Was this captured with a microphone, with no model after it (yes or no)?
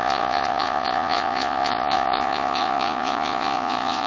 no